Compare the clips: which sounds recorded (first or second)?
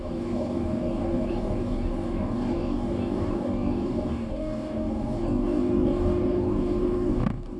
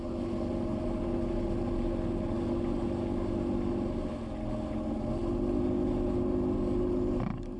second